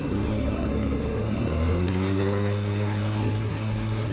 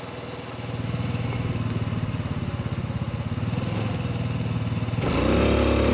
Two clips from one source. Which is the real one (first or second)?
second